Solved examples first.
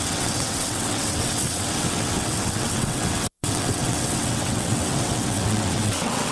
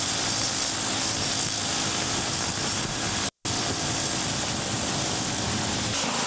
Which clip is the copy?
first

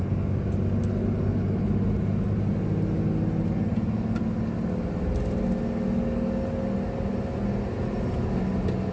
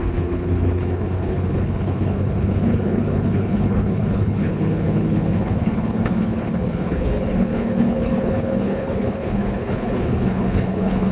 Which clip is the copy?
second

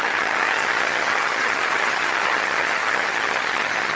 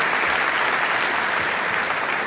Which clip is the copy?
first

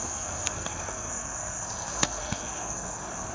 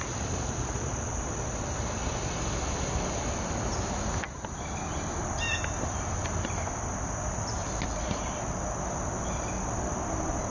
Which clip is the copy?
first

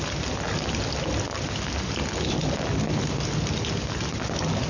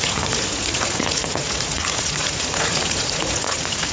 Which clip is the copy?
second